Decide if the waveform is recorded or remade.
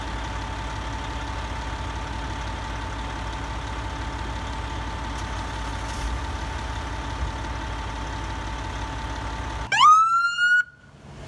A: recorded